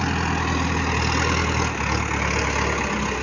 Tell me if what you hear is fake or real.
real